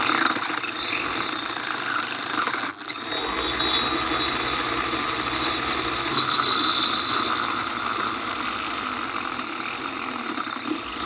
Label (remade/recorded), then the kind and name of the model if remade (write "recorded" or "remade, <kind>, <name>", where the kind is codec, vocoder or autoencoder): recorded